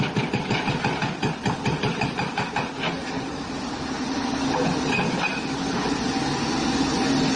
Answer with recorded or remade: recorded